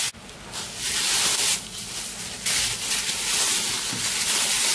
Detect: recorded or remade recorded